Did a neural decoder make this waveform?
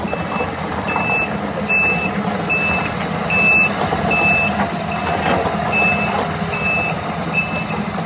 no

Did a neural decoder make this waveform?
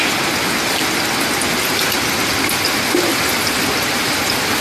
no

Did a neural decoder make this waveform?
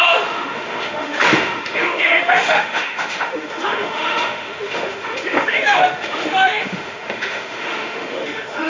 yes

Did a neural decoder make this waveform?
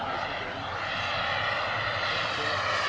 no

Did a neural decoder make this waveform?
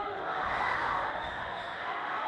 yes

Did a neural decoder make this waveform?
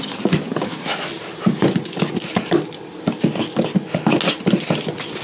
no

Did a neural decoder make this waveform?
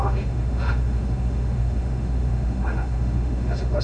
yes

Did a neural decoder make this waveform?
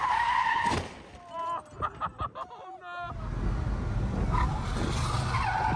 no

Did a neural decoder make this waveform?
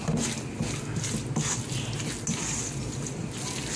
no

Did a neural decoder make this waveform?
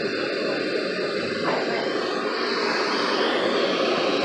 no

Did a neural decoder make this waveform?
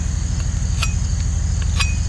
no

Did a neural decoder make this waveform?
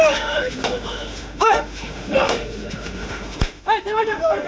yes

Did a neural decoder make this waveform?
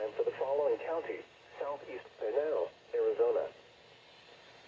no